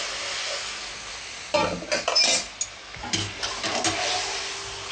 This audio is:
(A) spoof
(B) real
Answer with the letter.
B